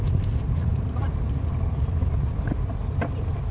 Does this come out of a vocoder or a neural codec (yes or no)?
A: no